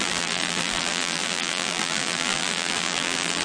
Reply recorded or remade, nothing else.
remade